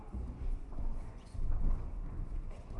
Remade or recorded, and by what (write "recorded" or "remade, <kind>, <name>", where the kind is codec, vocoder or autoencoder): remade, vocoder, Vocos